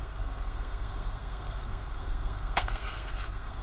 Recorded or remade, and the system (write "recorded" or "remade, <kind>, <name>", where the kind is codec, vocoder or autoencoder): remade, codec, SNAC